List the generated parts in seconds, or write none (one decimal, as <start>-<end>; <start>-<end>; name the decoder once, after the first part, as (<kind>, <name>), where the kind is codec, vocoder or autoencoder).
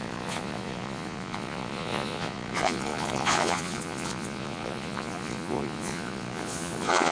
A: 0.0-7.1 (vocoder, Vocos)